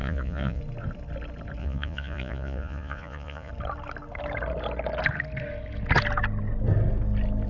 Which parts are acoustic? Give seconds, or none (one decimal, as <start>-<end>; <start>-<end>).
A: 0.6-1.6; 3.5-7.5